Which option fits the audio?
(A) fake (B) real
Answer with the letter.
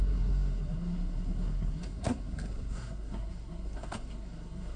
A